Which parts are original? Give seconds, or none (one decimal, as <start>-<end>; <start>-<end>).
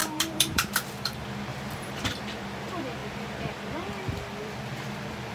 0.7-1.5; 2.2-5.3